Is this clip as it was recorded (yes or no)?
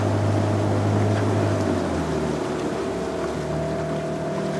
yes